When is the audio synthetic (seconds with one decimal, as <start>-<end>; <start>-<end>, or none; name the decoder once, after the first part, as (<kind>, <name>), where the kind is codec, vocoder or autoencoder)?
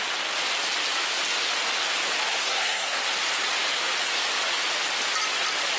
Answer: 2.3-3.0 (codec, SNAC)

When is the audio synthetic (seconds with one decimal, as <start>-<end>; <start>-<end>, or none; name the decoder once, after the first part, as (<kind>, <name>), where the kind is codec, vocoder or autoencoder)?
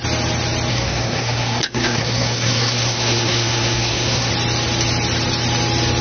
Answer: 0.7-4.3 (codec, SNAC)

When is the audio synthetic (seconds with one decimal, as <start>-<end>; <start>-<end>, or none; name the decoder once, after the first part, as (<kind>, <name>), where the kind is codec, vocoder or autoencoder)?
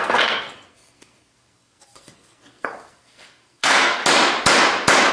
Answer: 0.0-4.0 (codec, SNAC)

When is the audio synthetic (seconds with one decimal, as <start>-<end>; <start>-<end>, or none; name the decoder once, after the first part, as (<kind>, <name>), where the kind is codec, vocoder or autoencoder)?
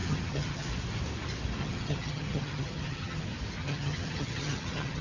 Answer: 0.0-0.7 (vocoder, HiFi-GAN); 1.6-3.2; 3.6-5.0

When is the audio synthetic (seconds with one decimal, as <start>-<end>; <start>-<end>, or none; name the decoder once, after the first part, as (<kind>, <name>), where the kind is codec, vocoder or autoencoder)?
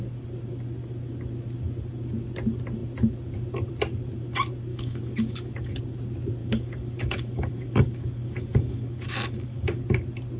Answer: 4.7-5.8 (codec, DAC); 6.4-9.9